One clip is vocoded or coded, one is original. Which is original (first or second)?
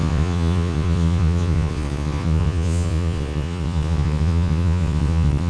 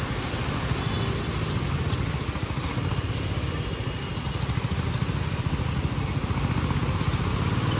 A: second